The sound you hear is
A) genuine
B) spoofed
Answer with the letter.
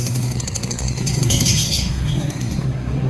B